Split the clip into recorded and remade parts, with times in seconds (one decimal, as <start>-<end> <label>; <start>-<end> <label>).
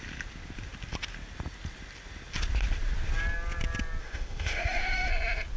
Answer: 0.0-4.0 recorded; 4.0-5.1 remade; 5.1-5.6 recorded